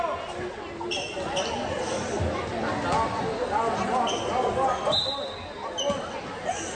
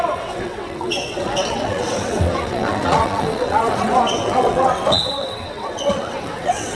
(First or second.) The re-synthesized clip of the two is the second